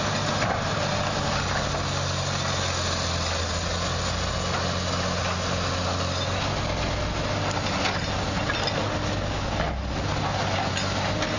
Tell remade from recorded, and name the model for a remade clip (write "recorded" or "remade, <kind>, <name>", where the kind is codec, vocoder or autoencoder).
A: recorded